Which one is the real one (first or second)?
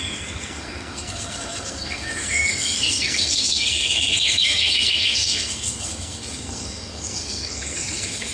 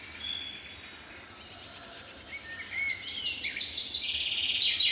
second